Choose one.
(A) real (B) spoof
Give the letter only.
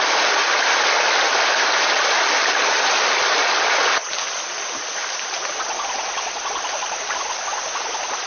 A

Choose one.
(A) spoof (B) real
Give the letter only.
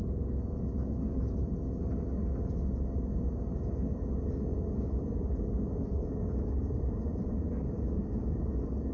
B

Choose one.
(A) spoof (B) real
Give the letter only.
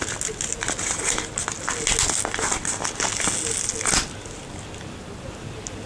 B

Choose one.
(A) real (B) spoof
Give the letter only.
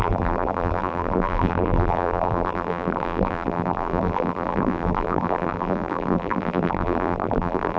B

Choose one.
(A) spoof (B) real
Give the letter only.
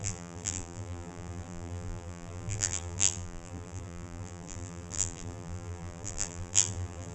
A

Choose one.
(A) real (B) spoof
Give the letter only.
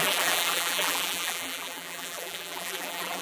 B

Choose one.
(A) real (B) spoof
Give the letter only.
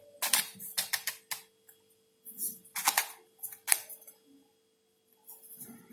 A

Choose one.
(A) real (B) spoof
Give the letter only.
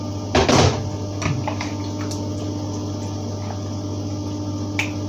A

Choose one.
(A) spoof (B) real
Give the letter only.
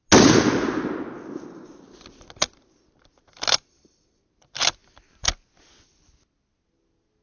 B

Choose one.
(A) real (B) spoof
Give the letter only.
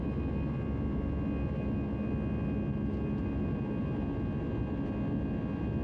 A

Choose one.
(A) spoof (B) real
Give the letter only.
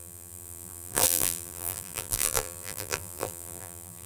A